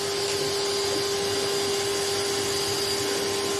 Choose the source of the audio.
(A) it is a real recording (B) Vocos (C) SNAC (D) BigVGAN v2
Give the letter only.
A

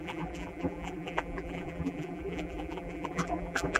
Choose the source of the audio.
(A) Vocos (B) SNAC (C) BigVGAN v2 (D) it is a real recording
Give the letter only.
C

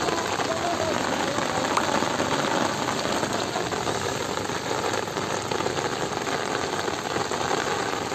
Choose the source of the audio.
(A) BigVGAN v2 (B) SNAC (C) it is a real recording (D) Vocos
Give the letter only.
C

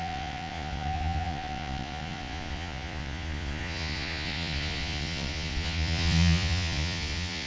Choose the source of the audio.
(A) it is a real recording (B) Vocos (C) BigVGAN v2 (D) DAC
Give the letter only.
B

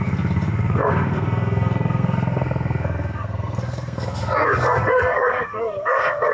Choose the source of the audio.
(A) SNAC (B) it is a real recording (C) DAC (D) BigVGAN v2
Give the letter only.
A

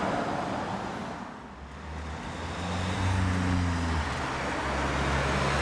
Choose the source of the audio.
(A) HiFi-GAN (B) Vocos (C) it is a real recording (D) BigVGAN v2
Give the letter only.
C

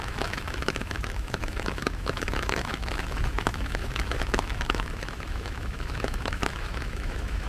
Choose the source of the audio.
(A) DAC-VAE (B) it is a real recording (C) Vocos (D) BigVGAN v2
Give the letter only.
A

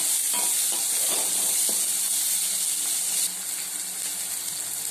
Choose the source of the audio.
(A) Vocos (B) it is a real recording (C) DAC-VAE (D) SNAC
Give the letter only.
B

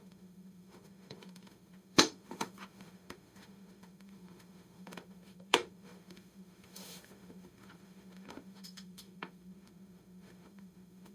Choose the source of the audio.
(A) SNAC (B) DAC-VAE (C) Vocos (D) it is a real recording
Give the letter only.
B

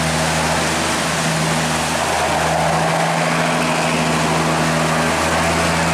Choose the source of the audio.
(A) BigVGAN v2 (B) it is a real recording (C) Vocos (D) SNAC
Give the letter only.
B